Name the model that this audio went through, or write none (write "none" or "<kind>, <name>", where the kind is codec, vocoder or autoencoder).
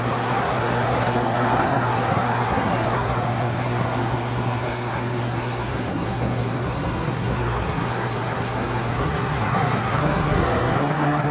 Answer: codec, SNAC